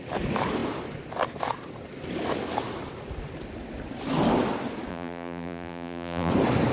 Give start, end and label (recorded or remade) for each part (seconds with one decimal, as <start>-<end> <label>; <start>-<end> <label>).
0.0-4.9 recorded; 4.9-6.3 remade; 6.3-6.7 recorded